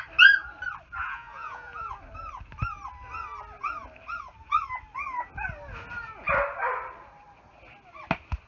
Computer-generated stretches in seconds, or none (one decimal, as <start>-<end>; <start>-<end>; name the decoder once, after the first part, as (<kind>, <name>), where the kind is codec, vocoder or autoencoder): 1.0-1.9 (vocoder, Vocos)